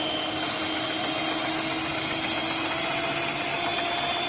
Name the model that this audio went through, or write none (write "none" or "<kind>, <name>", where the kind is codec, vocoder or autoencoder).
none